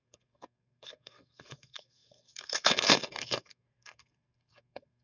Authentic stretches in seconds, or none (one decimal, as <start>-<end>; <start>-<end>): none